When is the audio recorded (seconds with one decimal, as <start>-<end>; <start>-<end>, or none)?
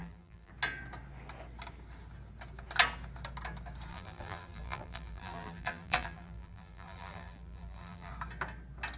0.5-3.9; 8.1-9.0